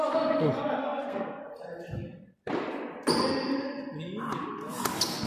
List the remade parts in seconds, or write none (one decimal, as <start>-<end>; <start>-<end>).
0.8-1.4